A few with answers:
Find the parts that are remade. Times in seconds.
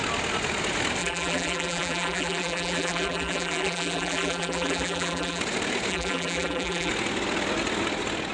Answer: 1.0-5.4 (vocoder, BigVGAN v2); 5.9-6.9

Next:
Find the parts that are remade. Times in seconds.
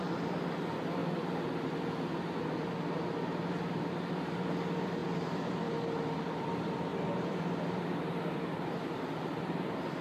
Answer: 0.0-1.0 (vocoder, BigVGAN v2); 4.1-10.0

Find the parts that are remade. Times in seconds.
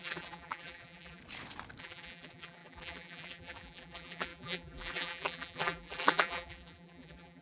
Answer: 0.0-1.2 (vocoder, BigVGAN v2); 1.8-7.4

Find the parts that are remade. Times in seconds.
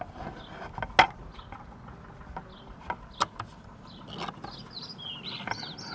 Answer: 3.5-4.0 (vocoder, BigVGAN v2)